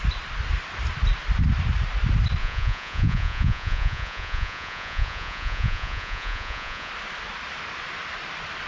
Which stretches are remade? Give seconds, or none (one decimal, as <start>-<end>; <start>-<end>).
2.4-6.9